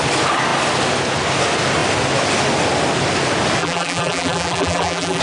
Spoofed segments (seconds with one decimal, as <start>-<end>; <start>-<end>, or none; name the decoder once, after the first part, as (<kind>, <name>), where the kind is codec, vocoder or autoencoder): 3.6-5.2 (vocoder, BigVGAN v2)